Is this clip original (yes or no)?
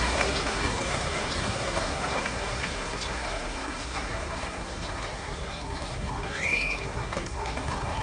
no